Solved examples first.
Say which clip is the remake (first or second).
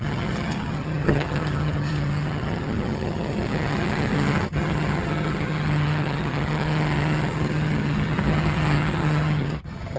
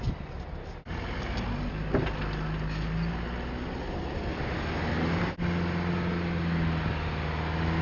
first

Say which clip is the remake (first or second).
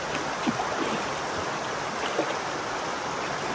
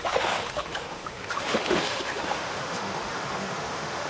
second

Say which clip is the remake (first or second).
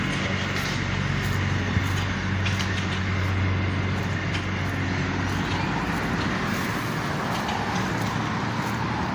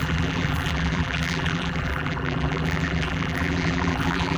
second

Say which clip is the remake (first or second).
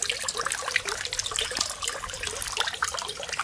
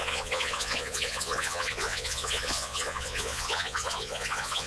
second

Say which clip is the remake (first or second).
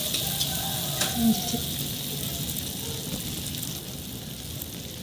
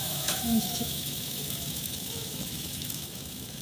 second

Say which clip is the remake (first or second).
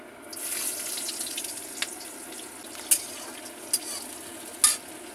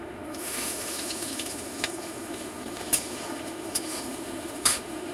second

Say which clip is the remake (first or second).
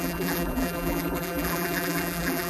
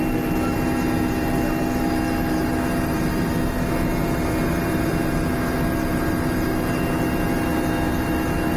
first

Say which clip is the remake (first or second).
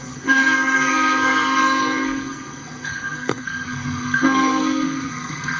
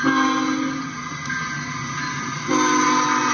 first